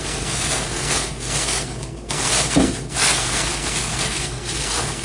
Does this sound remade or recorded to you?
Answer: remade